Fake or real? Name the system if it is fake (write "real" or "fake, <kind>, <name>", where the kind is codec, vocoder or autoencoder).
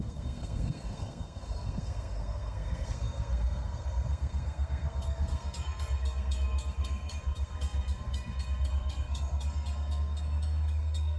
fake, codec, SNAC